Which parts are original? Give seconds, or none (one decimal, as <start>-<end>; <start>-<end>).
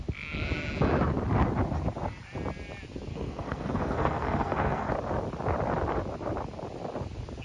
0.0-3.1; 4.9-7.4